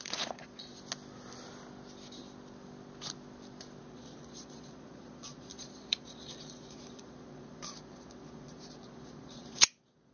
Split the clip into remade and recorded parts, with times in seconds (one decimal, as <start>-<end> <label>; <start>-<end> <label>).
0.0-0.7 remade; 0.7-3.8 recorded; 3.8-10.1 remade